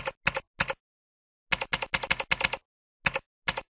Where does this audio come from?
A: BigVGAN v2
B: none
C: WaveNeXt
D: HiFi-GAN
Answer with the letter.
B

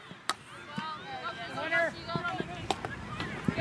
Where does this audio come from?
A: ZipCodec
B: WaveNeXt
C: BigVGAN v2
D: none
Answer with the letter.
D